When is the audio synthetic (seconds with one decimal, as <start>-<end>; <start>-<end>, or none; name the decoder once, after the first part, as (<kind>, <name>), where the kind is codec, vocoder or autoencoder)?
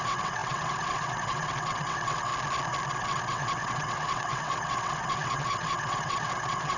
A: 0.0-2.3 (vocoder, WaveNeXt); 2.9-6.8